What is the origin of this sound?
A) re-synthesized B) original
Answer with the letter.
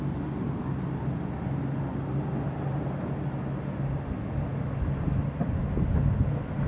B